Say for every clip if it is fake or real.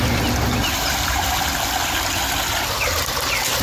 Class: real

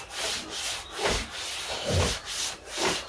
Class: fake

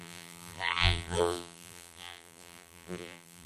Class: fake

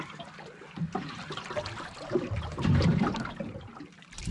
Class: fake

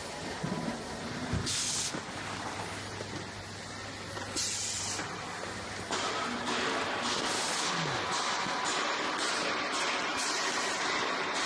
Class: real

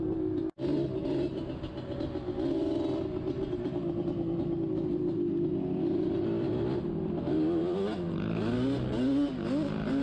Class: real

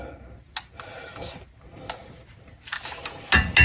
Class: fake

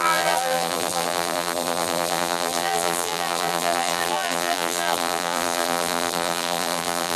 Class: fake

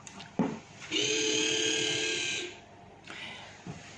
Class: fake